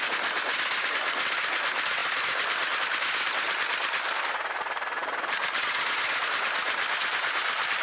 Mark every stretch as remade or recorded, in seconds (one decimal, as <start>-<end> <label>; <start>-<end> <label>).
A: 0.0-2.0 recorded; 2.0-2.8 remade; 2.8-7.8 recorded